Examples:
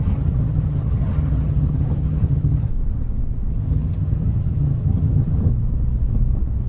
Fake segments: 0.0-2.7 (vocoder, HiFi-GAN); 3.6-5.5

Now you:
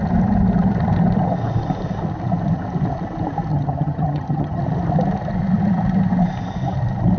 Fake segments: 3.5-4.6 (vocoder, HiFi-GAN)

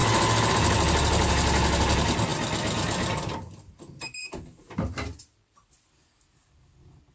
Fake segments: none

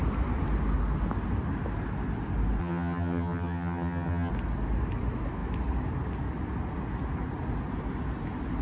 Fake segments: 2.6-4.3 (vocoder, HiFi-GAN)